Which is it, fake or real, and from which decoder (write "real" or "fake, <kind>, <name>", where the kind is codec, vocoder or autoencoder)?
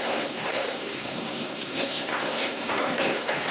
fake, codec, SNAC